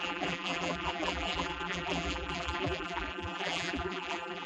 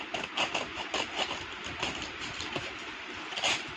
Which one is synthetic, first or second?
first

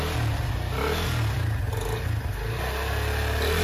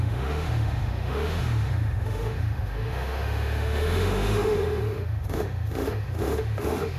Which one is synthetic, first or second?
second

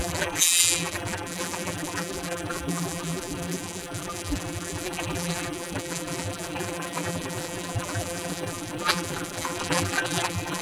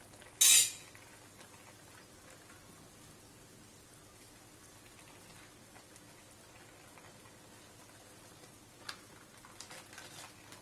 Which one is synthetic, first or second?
first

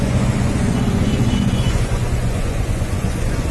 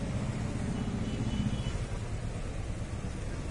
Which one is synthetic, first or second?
first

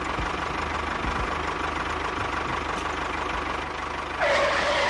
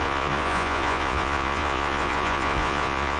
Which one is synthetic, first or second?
second